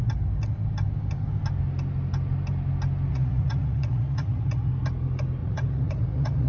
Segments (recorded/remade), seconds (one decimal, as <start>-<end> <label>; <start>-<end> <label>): 0.0-3.1 recorded; 3.1-4.7 remade; 4.7-5.4 recorded; 5.4-6.5 remade